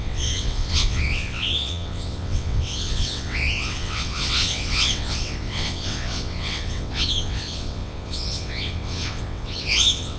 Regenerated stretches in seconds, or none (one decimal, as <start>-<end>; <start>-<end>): 0.0-10.2